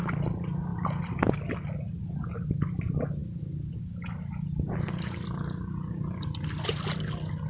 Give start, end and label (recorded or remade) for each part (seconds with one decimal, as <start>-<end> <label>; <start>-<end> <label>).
0.0-7.5 recorded